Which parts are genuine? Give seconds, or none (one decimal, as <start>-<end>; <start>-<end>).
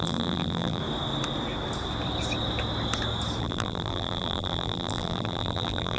0.8-3.4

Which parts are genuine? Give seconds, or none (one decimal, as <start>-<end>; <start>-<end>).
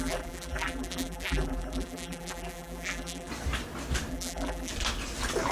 3.3-4.1; 4.7-5.5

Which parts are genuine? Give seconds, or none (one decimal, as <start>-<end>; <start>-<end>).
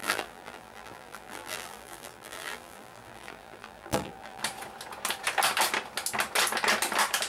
4.4-7.3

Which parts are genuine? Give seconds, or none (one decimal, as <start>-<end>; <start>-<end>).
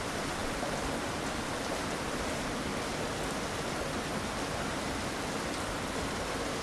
2.7-6.6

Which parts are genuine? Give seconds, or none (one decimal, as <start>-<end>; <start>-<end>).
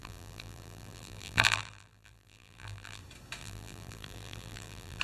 3.0-3.4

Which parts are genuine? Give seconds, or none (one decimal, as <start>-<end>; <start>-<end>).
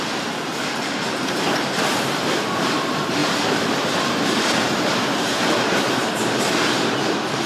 none